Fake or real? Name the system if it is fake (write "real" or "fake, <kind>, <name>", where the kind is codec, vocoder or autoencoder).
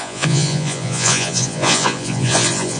fake, vocoder, Vocos